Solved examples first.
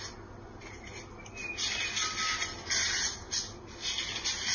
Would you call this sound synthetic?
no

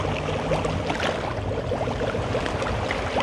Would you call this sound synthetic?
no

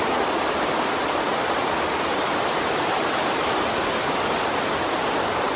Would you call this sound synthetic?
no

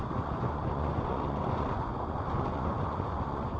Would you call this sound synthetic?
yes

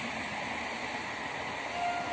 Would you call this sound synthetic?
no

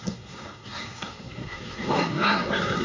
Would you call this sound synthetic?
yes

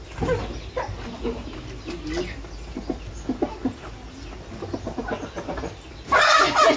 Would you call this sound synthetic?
no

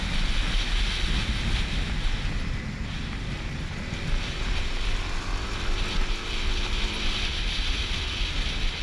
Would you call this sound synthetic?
no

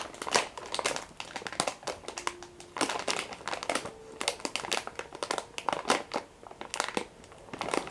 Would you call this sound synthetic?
no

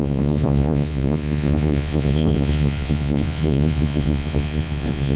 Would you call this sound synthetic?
yes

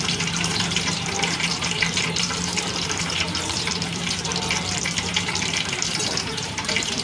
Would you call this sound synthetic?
yes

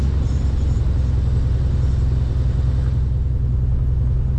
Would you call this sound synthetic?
no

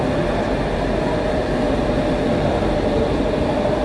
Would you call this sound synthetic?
no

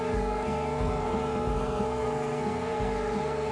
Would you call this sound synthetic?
yes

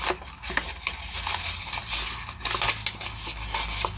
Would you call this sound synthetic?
no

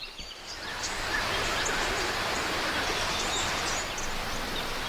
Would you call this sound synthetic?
no